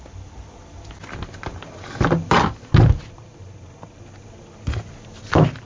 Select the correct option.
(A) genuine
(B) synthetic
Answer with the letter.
A